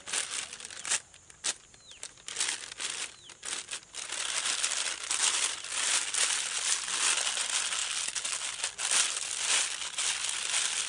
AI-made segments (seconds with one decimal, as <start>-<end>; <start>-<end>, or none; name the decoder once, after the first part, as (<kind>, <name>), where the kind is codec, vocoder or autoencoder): none